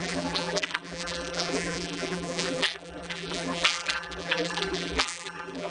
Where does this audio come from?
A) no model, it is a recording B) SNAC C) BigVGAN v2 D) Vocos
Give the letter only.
C